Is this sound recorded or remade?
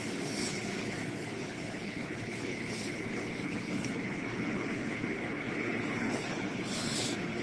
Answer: remade